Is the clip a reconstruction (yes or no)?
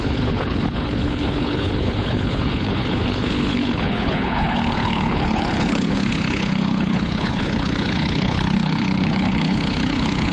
yes